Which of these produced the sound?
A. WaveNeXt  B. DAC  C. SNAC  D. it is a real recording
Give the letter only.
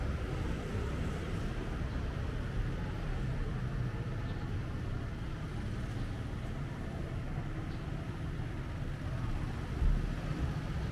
D